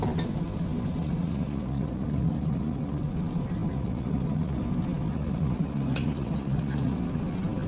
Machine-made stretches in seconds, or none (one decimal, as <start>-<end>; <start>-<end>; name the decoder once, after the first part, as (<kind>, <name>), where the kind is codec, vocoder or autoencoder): 1.0-3.0 (vocoder, Vocos); 3.7-4.6; 5.1-7.0